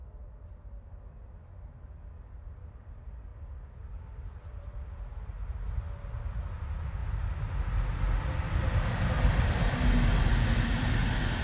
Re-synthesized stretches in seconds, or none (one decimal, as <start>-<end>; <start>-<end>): 0.0-0.9

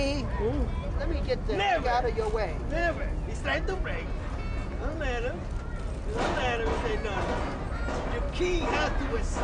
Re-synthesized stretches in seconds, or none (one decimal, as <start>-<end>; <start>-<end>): none